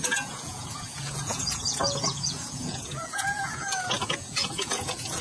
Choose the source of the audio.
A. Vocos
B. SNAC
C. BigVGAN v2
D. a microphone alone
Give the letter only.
A